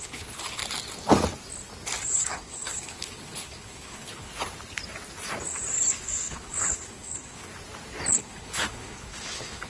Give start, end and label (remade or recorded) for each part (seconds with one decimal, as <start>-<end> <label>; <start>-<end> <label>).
0.0-0.6 remade; 0.6-2.1 recorded; 2.1-4.3 remade; 4.3-5.9 recorded; 5.9-7.5 remade; 7.5-8.1 recorded; 8.1-9.7 remade